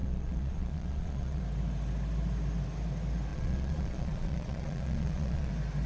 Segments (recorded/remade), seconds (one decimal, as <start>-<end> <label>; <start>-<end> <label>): 0.0-1.4 remade; 1.4-3.3 recorded; 3.3-5.5 remade; 5.5-5.9 recorded